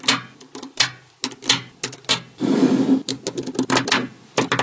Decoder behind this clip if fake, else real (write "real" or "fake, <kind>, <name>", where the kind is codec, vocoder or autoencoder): real